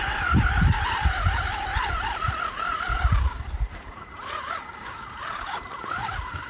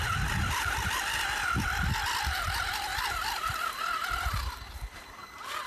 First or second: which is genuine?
second